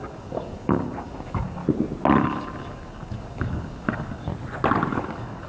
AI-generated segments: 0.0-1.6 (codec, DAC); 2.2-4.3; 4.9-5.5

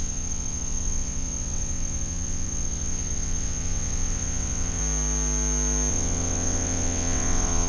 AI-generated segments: 0.0-4.8 (vocoder, WaveNeXt); 5.9-7.7

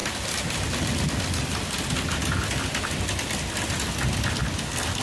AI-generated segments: none